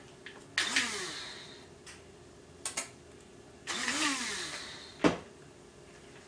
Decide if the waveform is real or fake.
real